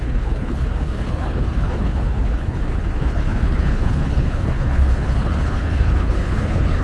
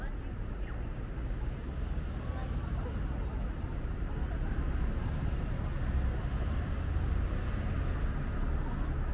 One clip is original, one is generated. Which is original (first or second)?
second